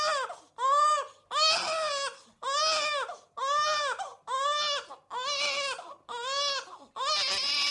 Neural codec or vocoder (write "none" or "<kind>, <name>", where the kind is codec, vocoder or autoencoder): none